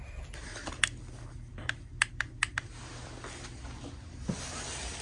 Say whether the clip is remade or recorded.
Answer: recorded